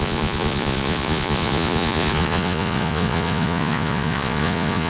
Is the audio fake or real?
fake